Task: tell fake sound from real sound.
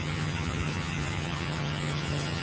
fake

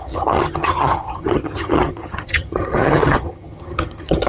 fake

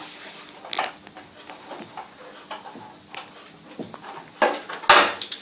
real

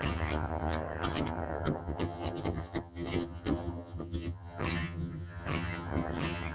fake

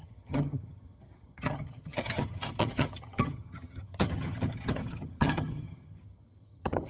fake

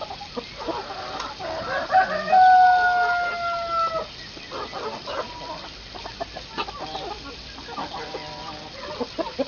real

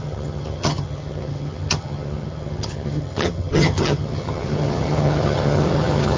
fake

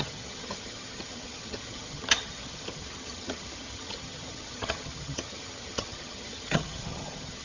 fake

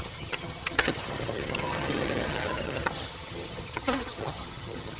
fake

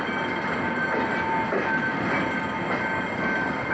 real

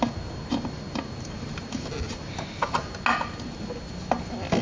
real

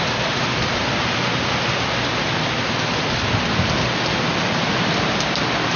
real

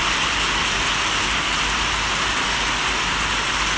real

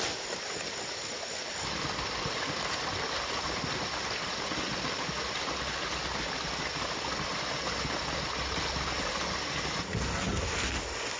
real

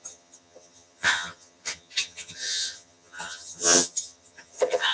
fake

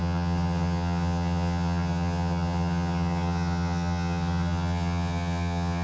fake